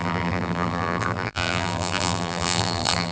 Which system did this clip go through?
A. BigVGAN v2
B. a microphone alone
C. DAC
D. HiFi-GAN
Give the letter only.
A